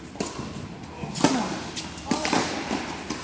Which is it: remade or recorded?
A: recorded